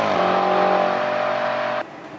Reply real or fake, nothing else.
real